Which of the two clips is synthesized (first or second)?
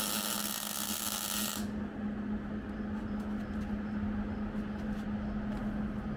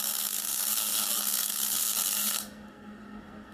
second